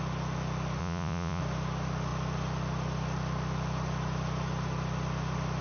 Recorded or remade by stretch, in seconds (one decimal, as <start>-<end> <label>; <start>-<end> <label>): 0.0-0.8 recorded; 0.8-1.4 remade; 1.4-5.6 recorded

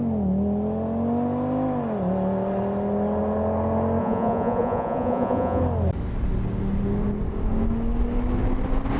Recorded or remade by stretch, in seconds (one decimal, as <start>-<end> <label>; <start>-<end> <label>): 0.0-4.0 recorded; 4.0-5.6 remade; 5.6-9.0 recorded